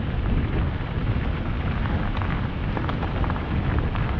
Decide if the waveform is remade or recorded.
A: recorded